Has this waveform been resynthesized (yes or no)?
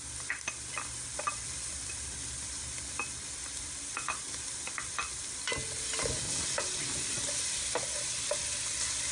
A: yes